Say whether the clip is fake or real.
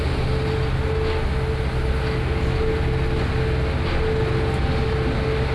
real